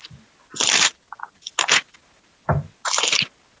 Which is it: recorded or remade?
recorded